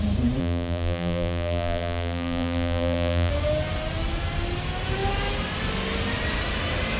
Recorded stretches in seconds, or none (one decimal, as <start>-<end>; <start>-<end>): 0.0-0.4; 3.3-7.0